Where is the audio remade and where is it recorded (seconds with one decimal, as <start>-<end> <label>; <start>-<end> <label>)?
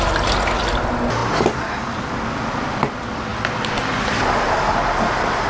0.0-5.5 recorded